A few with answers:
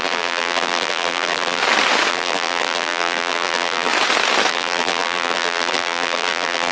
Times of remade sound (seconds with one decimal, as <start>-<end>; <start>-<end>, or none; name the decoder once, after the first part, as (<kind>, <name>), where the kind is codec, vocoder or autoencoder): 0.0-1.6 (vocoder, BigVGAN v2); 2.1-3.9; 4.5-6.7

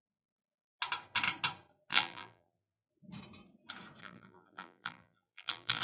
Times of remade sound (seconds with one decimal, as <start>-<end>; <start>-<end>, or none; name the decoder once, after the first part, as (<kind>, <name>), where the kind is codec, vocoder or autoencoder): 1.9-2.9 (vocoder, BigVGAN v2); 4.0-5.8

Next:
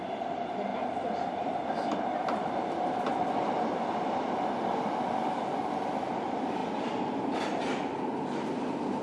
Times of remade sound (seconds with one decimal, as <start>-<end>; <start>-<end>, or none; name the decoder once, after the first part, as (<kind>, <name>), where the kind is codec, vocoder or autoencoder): 0.7-2.9 (vocoder, BigVGAN v2)

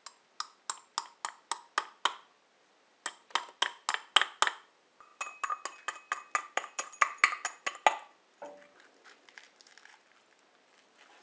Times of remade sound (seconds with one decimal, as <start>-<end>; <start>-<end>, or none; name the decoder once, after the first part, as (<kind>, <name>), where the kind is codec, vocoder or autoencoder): none

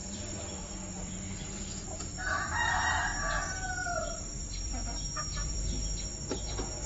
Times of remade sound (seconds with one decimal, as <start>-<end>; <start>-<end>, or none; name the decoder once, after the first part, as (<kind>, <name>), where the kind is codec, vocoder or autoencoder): 0.0-1.7 (vocoder, BigVGAN v2); 3.8-5.8

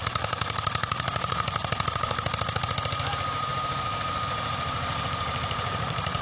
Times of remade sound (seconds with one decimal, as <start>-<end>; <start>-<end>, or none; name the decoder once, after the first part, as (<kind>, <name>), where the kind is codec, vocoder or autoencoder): 0.0-1.6 (vocoder, BigVGAN v2); 3.1-6.2